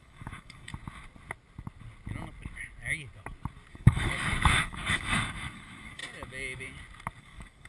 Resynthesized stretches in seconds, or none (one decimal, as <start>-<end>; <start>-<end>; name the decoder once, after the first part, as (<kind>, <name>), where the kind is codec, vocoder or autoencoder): 0.0-0.7 (codec, DAC); 3.7-6.0; 7.2-7.7